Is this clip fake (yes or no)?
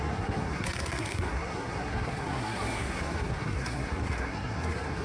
yes